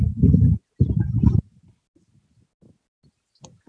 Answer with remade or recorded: recorded